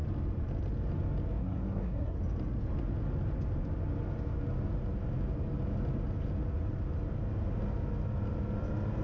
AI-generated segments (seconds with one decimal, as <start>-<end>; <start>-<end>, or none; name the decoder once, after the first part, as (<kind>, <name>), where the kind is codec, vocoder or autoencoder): 1.4-2.2 (codec, SNAC)